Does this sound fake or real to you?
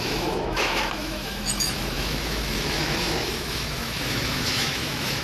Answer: fake